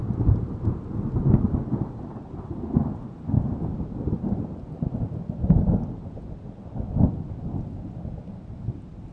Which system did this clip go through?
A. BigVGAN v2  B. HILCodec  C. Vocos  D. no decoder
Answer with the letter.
D